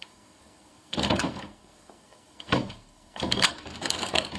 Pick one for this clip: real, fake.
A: fake